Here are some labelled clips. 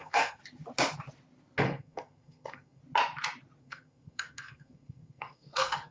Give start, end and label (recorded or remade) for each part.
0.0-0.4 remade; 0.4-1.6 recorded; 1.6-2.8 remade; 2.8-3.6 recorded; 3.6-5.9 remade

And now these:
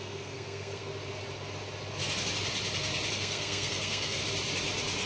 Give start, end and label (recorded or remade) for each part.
0.0-0.9 remade; 0.9-3.1 recorded; 3.1-4.2 remade; 4.2-5.1 recorded

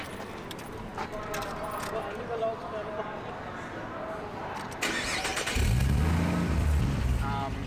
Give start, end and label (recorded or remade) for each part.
0.0-7.7 recorded

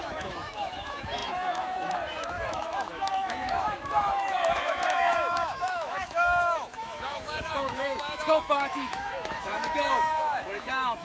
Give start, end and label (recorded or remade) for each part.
0.0-11.0 remade

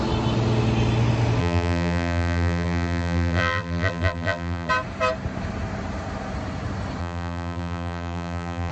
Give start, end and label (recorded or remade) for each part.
0.0-1.4 recorded; 1.4-4.7 remade; 4.7-7.0 recorded; 7.0-8.7 remade